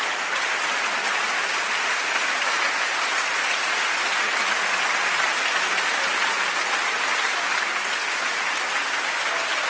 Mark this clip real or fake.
real